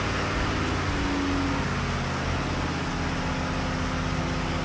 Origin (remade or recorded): recorded